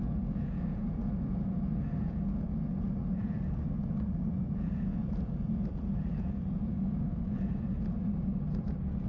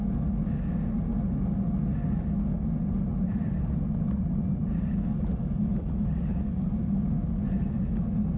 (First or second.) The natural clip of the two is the second